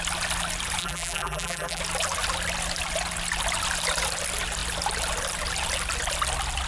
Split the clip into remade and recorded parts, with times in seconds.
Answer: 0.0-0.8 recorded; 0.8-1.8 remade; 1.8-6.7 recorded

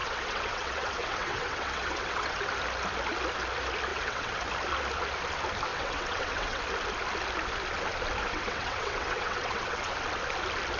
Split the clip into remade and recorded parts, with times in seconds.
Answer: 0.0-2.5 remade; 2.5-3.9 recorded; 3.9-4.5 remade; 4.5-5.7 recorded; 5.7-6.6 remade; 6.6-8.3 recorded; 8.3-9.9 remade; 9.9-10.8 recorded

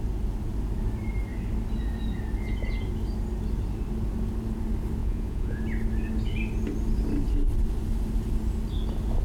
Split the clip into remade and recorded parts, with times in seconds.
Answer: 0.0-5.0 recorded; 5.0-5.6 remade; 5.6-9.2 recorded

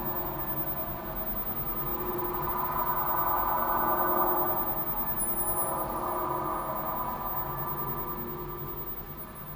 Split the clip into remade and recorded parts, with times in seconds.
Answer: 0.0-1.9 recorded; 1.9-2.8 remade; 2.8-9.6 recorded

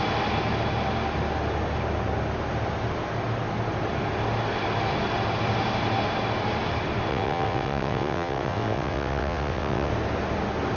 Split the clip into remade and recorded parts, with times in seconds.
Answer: 0.0-7.1 recorded; 7.1-9.9 remade; 9.9-10.8 recorded

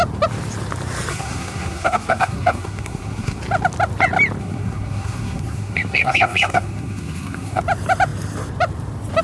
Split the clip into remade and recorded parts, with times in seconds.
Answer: 0.0-1.1 recorded; 1.1-3.4 remade; 3.4-4.4 recorded; 4.4-7.6 remade; 7.6-9.2 recorded

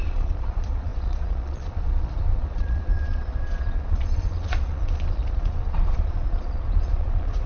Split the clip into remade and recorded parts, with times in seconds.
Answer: 0.0-7.5 remade